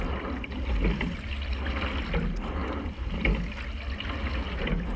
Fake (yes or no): no